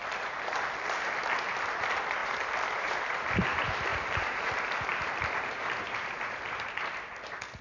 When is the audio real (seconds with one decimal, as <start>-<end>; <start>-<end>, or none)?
0.0-2.2; 3.1-3.9; 4.5-4.9; 7.1-7.6